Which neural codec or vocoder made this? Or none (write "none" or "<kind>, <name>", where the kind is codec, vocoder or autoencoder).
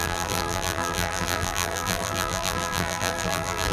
vocoder, BigVGAN v2